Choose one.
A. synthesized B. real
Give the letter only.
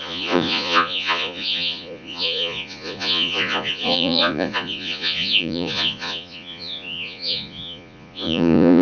A